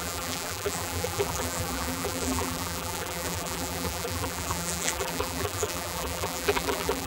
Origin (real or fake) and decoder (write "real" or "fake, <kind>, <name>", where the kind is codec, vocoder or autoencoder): fake, vocoder, BigVGAN v2